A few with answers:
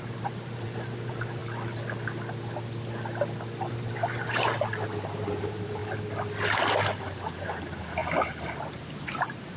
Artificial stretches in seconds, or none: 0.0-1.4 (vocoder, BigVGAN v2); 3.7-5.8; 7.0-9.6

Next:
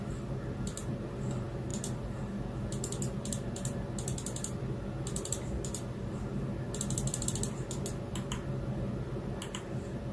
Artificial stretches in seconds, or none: none

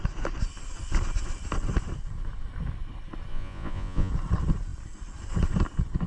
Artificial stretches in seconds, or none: 3.3-4.1 (vocoder, Vocos)

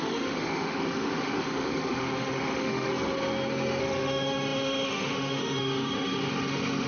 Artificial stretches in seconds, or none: 0.0-2.9 (autoencoder, DAC-VAE); 3.8-6.9

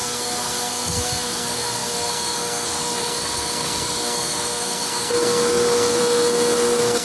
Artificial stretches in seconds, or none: 0.0-7.0 (codec, SNAC)

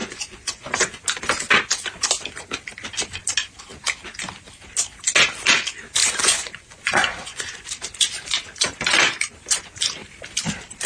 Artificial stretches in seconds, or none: 0.0-1.0 (vocoder, Vocos); 6.0-7.7

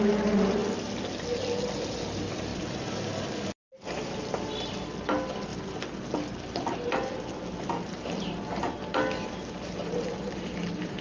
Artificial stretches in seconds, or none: 2.5-3.3 (vocoder, BigVGAN v2)